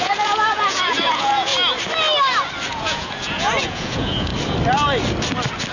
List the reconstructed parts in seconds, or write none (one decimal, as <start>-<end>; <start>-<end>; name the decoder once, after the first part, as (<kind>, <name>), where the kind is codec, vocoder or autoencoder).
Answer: 0.0-1.5 (vocoder, Vocos); 2.7-4.3